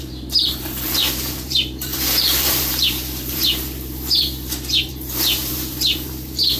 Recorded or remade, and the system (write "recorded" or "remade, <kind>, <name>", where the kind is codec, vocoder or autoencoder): remade, vocoder, BigVGAN v2